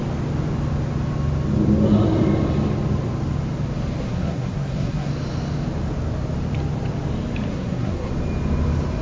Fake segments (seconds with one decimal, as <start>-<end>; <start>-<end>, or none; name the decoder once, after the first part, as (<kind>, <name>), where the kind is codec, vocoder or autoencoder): 4.0-5.1 (codec, SNAC); 7.5-8.1